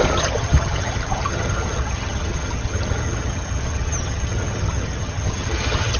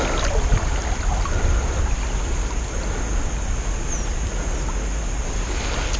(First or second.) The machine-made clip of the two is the first